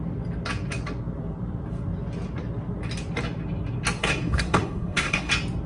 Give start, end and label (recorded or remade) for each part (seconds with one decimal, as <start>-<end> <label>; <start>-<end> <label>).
0.0-4.0 recorded; 4.0-5.3 remade; 5.3-5.7 recorded